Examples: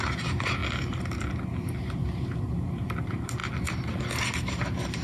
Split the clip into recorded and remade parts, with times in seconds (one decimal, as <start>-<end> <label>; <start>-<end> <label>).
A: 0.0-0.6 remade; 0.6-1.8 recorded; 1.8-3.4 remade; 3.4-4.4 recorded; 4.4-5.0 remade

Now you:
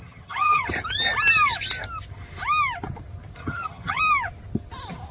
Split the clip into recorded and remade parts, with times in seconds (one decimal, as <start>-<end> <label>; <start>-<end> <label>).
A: 0.0-0.7 remade; 0.7-3.4 recorded; 3.4-4.0 remade; 4.0-5.1 recorded

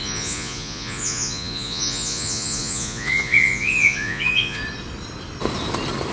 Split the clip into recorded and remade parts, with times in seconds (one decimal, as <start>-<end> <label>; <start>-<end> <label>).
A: 0.0-4.6 remade; 4.6-6.1 recorded

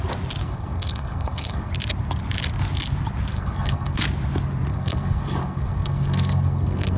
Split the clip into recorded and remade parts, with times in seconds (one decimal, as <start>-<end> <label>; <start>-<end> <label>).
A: 0.0-0.4 recorded; 0.4-1.7 remade; 1.7-3.3 recorded; 3.3-4.0 remade; 4.0-4.7 recorded; 4.7-7.0 remade

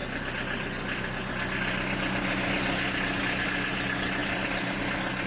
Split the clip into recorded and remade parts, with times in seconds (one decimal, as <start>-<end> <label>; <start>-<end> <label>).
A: 0.0-4.2 recorded; 4.2-4.8 remade; 4.8-5.3 recorded

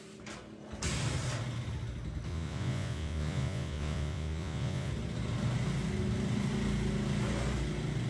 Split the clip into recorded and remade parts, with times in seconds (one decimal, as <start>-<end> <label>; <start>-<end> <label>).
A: 0.0-2.3 recorded; 2.3-4.9 remade; 4.9-8.1 recorded

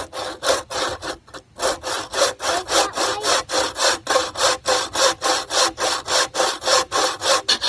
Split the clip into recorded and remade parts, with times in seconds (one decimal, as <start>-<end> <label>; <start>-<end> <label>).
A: 0.0-7.7 recorded